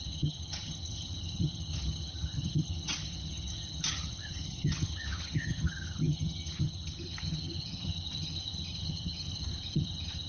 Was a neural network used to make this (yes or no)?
yes